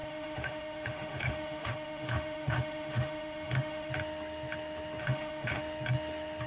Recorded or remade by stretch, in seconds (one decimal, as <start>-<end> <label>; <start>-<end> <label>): 0.0-3.9 remade; 3.9-5.0 recorded; 5.0-5.6 remade; 5.6-6.5 recorded